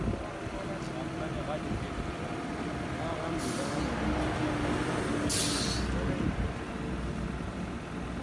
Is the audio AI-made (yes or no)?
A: no